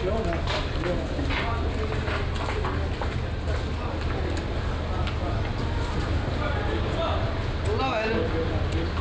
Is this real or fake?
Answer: real